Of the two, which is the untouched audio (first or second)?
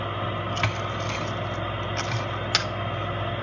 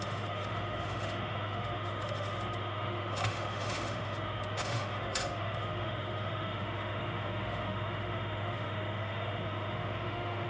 first